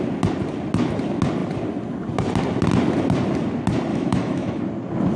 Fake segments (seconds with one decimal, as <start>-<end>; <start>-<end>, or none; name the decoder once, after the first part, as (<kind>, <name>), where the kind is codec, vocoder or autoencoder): 3.9-4.6 (autoencoder, DAC-VAE)